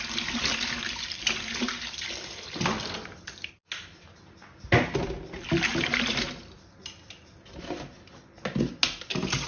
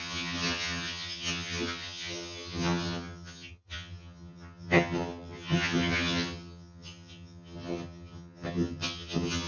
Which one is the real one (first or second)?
first